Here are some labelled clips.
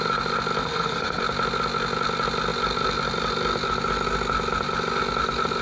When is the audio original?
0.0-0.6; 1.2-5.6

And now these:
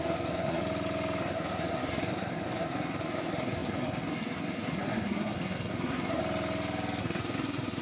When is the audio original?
0.6-1.2; 6.2-7.0

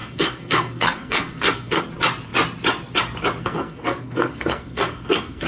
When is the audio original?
1.8-3.4